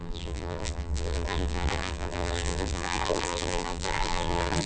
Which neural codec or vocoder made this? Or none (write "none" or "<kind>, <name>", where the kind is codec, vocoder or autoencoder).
vocoder, BigVGAN v2